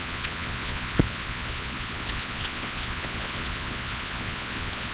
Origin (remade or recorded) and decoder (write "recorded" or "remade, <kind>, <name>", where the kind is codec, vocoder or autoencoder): remade, vocoder, Vocos